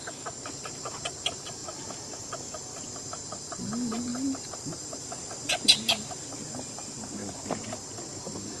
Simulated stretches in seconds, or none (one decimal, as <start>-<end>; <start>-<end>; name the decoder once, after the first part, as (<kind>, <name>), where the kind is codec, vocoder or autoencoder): 0.0-1.6 (vocoder, BigVGAN v2); 3.1-7.2; 8.2-8.6